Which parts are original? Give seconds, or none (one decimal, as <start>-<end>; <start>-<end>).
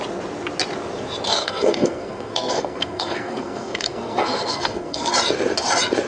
0.0-1.4; 5.1-6.1